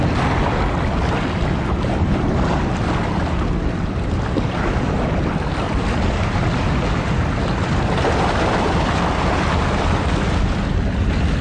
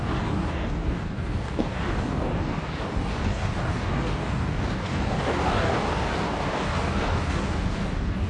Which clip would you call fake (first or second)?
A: second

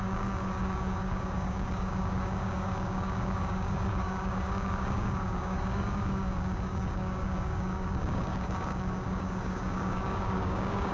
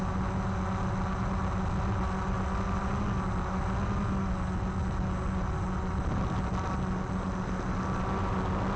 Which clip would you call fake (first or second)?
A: first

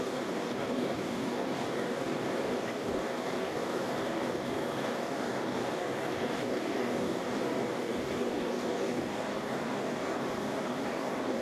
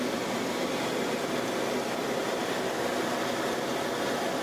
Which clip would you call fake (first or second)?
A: first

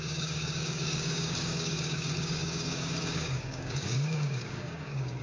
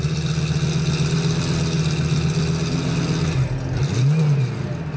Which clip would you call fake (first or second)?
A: first